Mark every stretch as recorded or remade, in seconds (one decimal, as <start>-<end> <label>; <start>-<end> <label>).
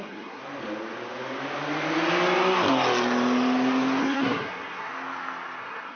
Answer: 0.0-0.4 remade; 0.4-4.0 recorded; 4.0-4.9 remade; 4.9-5.6 recorded; 5.6-6.0 remade